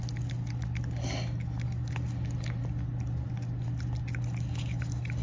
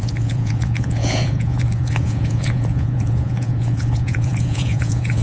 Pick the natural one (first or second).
first